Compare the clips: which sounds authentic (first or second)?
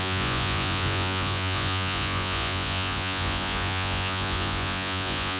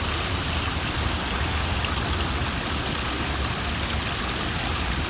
second